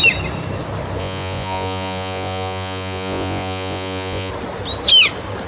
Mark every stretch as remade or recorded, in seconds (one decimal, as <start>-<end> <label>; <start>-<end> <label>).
0.0-1.0 recorded; 1.0-4.3 remade; 4.3-5.5 recorded

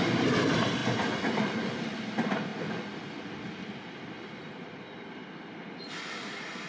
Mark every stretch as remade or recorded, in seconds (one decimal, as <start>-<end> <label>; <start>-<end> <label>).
0.0-6.7 recorded